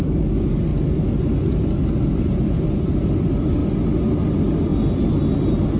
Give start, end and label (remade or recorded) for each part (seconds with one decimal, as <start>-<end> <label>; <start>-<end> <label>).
0.0-5.8 recorded